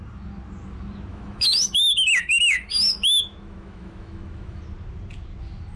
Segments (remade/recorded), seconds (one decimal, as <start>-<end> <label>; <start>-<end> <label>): 0.0-1.1 recorded; 1.1-4.6 remade; 4.6-5.8 recorded